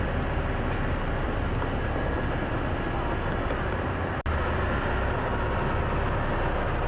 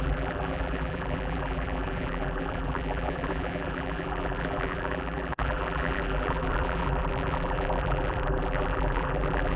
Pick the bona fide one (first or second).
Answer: first